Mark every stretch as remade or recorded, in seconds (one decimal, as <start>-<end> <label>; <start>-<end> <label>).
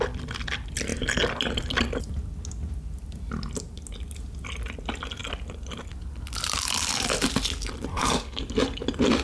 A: 0.0-7.9 recorded; 7.9-8.4 remade; 8.4-9.2 recorded